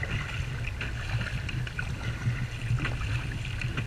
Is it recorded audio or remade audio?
recorded